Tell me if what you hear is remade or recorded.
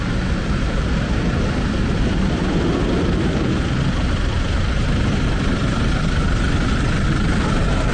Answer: remade